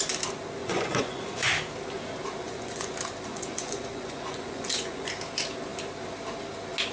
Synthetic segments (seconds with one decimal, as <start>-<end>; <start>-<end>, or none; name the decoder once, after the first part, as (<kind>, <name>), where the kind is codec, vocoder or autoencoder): 0.6-1.5 (vocoder, Vocos); 2.4-2.9; 3.3-5.1